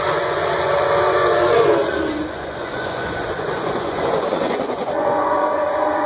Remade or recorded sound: remade